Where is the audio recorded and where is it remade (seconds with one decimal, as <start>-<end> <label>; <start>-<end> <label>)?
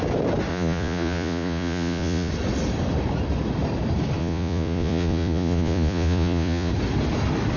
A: 0.0-0.5 recorded; 0.5-2.3 remade; 2.3-4.2 recorded; 4.2-6.7 remade; 6.7-7.6 recorded